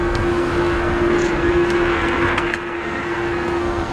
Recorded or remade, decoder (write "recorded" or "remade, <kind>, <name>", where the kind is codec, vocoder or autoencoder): remade, codec, SNAC